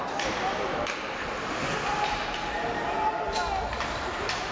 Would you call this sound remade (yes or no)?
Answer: no